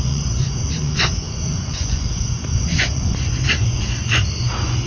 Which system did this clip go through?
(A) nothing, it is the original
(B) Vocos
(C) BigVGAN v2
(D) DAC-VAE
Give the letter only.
B